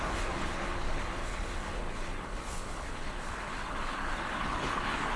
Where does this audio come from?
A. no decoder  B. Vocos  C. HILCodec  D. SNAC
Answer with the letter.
C